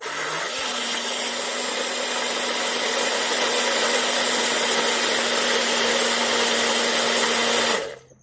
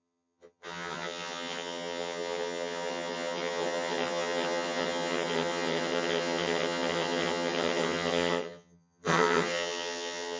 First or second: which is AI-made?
second